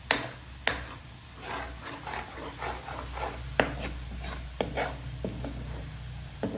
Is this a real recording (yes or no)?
yes